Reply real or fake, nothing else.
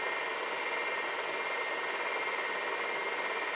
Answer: real